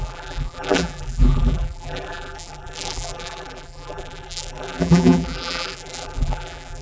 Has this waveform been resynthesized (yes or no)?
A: yes